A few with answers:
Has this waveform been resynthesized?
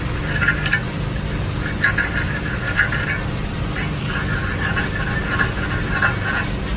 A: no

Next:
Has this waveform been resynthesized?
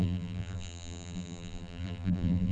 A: yes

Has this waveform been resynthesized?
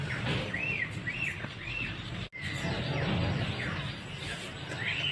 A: no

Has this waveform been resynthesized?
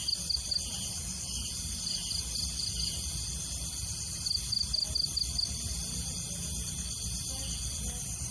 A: no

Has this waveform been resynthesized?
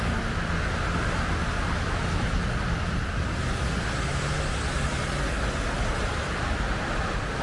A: no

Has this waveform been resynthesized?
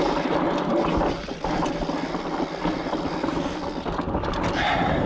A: no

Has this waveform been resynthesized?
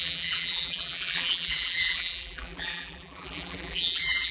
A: yes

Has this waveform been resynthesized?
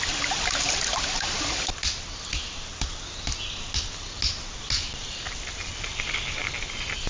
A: no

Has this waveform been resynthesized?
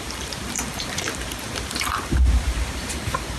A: yes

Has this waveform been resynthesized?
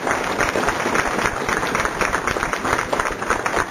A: no